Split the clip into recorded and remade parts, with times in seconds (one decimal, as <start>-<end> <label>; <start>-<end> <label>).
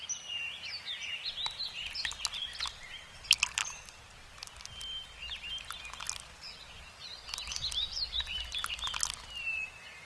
0.0-10.1 recorded